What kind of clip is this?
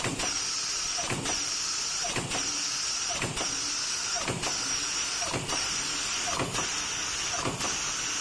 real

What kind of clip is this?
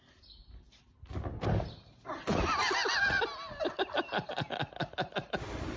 real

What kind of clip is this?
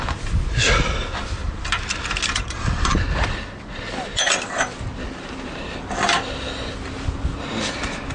real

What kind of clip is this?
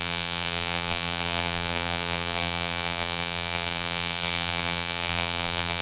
fake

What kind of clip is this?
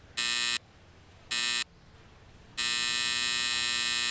real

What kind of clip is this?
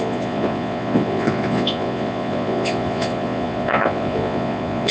fake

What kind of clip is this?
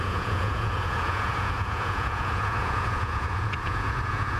fake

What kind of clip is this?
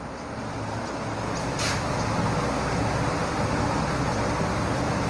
real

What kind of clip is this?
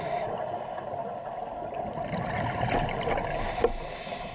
real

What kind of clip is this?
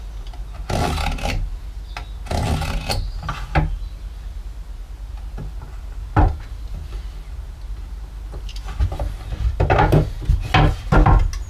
real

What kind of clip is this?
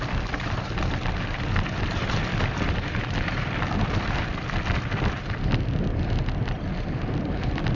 fake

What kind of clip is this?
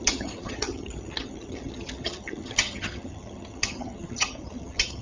fake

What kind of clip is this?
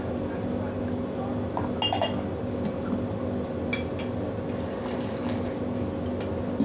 real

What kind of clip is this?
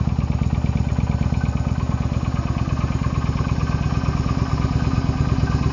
real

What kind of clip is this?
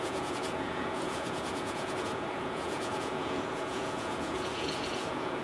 fake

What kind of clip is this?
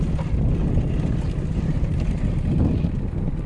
real